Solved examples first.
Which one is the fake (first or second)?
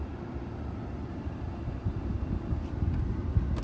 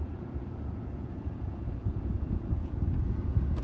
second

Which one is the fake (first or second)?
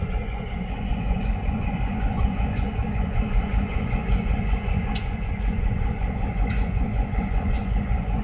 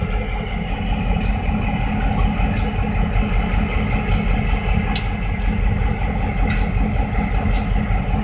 first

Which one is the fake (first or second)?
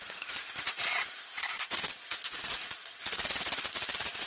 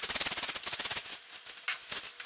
first